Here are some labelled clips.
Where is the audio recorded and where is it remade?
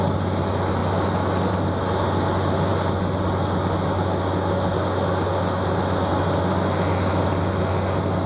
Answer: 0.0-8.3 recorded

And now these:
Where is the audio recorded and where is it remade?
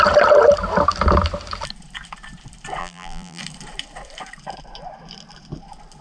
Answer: 0.0-2.8 recorded; 2.8-3.4 remade; 3.4-6.0 recorded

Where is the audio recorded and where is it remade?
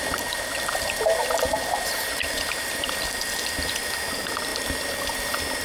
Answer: 0.0-5.6 remade